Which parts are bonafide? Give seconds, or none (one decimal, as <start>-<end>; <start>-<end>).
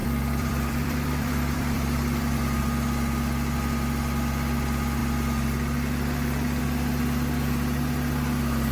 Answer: 2.6-8.7